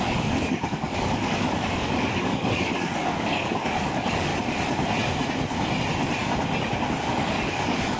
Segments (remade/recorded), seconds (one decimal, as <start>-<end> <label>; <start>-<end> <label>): 0.0-4.3 remade; 4.3-7.0 recorded; 7.0-8.0 remade